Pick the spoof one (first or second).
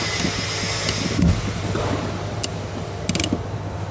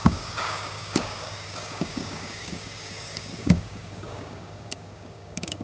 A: second